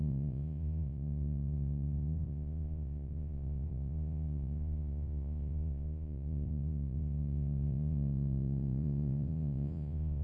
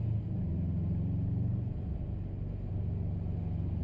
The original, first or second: second